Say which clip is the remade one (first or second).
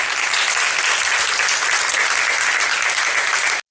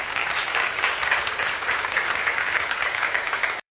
second